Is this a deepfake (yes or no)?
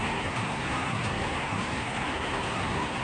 yes